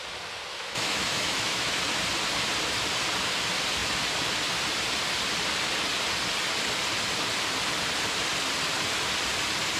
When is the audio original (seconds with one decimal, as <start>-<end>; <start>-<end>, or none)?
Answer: 0.0-0.5; 1.8-9.8